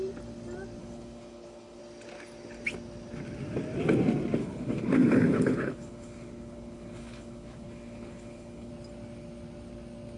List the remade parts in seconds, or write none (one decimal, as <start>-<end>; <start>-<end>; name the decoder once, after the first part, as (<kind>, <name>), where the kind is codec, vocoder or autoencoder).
0.8-1.8 (codec, HILCodec); 4.4-8.7